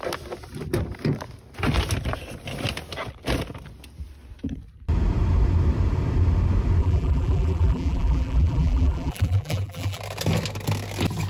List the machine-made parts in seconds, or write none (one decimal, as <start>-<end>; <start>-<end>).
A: 6.8-10.0